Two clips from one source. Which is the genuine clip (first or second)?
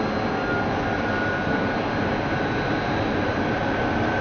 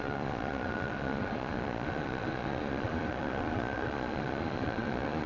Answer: first